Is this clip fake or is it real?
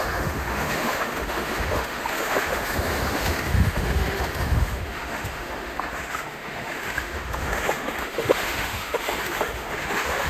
fake